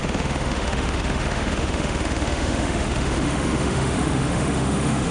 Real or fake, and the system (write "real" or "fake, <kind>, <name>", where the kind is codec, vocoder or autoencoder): fake, autoencoder, DAC-VAE